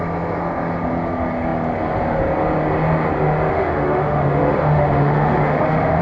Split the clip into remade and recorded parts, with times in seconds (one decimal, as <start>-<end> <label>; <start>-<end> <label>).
0.0-3.5 recorded; 3.5-6.0 remade